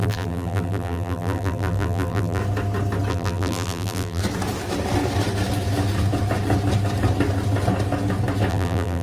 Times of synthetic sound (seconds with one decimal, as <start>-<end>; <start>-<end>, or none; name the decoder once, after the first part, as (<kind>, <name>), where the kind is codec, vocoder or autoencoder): 0.0-2.4 (vocoder, BigVGAN v2); 3.1-4.2; 8.5-9.0